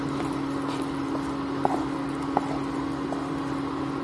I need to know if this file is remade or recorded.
recorded